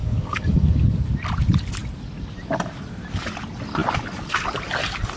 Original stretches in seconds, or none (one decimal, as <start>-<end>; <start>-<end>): 0.7-5.2